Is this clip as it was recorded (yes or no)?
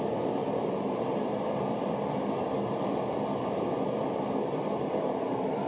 no